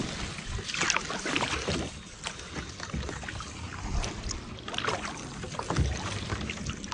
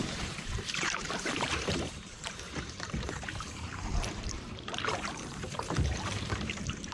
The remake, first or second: second